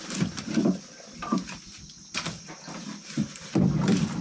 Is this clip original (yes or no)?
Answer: yes